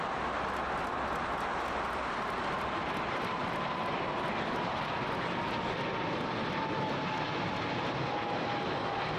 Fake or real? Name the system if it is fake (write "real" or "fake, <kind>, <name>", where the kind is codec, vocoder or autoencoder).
real